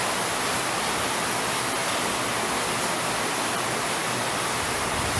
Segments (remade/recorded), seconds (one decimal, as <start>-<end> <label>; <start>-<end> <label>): 0.0-5.2 recorded